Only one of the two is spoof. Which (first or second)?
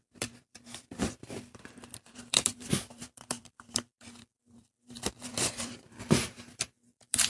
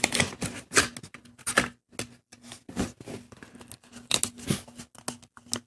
first